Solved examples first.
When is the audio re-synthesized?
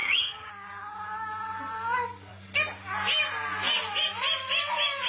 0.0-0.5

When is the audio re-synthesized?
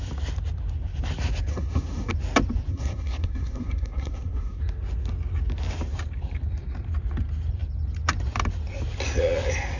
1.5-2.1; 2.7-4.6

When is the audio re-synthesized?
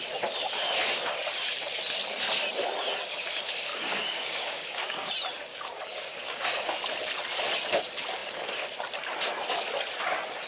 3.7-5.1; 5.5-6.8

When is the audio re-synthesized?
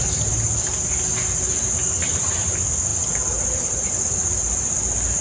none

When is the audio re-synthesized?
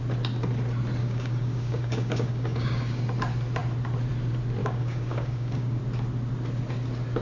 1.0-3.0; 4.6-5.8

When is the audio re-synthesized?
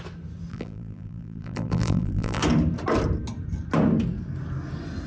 0.5-2.4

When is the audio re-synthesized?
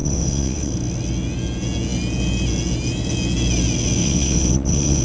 0.0-0.7; 4.0-5.0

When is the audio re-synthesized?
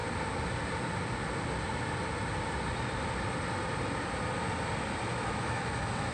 5.1-6.1